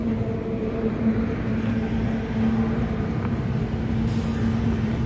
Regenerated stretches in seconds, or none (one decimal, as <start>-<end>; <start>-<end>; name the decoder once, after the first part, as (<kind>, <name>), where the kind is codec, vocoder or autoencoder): 0.0-1.5 (vocoder, BigVGAN v2); 4.6-5.1